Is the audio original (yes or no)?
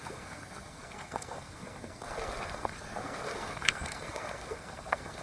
no